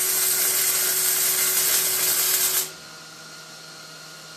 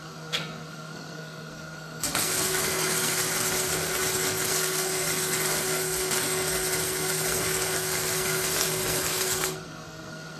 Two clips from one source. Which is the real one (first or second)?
first